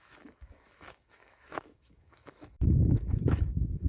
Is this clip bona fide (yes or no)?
no